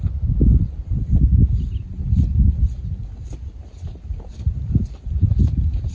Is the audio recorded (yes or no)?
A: yes